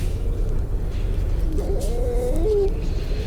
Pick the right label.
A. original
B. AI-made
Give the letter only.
A